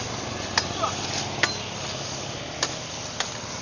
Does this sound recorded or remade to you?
recorded